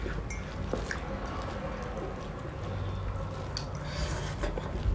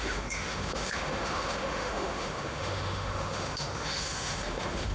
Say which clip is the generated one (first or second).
second